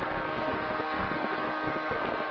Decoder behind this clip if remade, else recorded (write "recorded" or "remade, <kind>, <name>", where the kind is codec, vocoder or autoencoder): remade, codec, SNAC